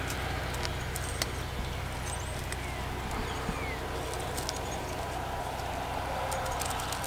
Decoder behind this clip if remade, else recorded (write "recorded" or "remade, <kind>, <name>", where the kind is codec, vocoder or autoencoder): recorded